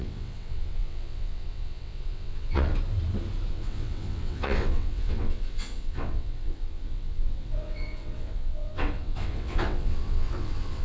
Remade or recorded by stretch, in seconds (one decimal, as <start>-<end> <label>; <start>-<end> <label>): 0.0-2.7 remade; 2.7-3.5 recorded; 3.5-10.8 remade